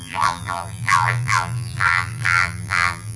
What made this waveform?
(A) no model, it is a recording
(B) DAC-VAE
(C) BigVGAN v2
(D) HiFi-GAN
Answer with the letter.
C